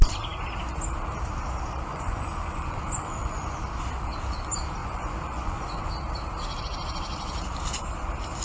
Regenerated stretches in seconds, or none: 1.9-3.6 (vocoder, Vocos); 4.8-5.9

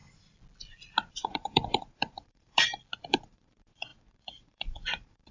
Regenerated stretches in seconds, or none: 1.1-2.6 (vocoder, Vocos); 3.1-5.3

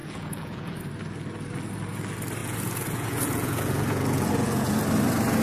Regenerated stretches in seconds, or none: 0.0-0.8 (vocoder, Vocos); 2.4-4.7

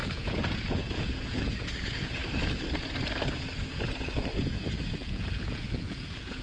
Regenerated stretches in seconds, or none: 0.0-2.2 (vocoder, Vocos); 3.7-6.4

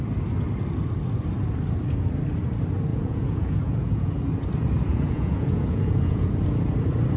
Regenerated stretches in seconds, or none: 2.9-4.1 (vocoder, Vocos); 4.9-6.3